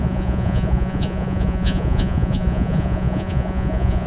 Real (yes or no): no